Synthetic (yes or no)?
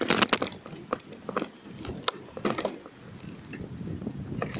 no